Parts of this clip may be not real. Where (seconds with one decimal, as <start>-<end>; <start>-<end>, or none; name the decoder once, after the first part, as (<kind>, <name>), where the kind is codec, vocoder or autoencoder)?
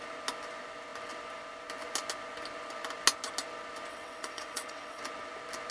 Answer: 3.9-5.0 (vocoder, WaveNeXt)